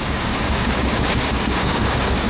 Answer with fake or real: fake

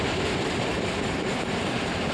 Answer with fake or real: fake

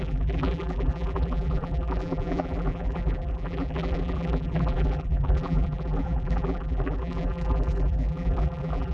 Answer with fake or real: fake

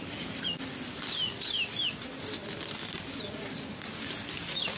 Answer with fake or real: real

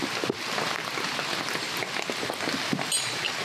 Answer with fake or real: real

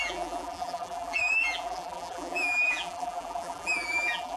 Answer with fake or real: fake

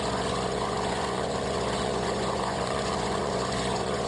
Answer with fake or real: fake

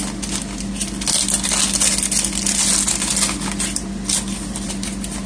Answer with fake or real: real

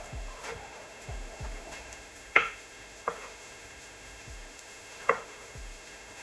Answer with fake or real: fake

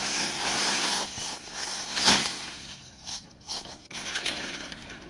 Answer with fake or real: fake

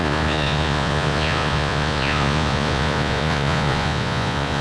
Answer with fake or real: fake